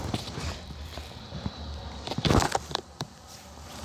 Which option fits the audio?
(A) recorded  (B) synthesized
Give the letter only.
B